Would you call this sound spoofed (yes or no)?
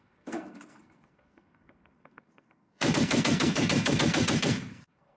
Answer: yes